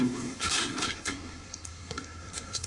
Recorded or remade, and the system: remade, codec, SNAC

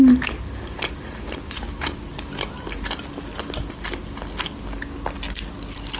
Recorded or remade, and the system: recorded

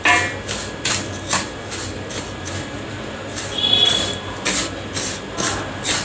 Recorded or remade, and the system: recorded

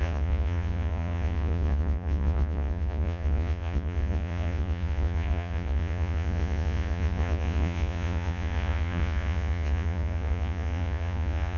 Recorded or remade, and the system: remade, vocoder, Vocos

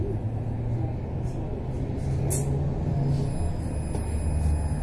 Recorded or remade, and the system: recorded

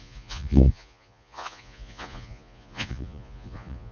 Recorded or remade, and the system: remade, vocoder, Vocos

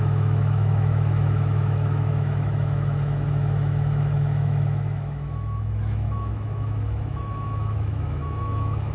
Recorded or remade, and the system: remade, autoencoder, DAC-VAE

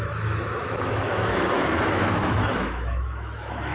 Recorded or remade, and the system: remade, autoencoder, DAC-VAE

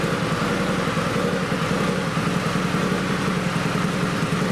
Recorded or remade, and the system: recorded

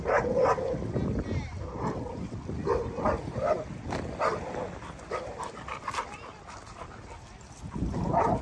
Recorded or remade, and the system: recorded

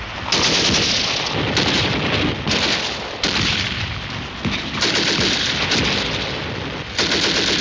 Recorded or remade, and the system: recorded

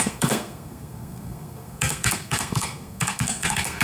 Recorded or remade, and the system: remade, codec, SNAC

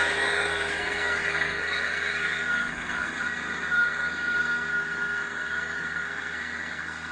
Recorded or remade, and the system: remade, codec, SNAC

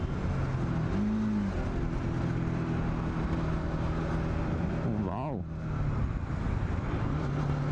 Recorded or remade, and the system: recorded